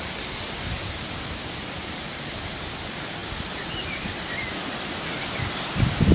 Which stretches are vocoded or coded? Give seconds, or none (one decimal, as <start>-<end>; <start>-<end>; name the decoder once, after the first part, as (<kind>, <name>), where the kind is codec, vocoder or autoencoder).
none